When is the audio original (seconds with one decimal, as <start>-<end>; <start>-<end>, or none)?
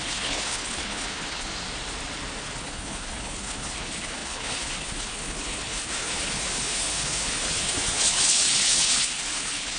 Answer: 1.5-2.5